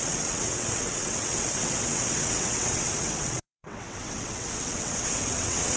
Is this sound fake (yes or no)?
yes